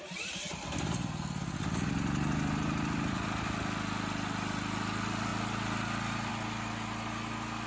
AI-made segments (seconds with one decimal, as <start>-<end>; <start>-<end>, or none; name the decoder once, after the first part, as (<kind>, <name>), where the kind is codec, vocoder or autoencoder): none